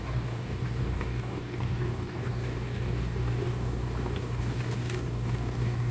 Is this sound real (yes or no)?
no